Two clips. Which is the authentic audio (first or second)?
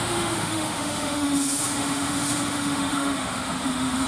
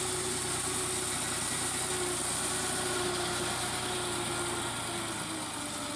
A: second